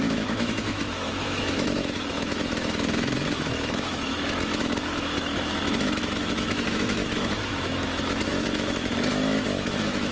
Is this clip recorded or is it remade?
remade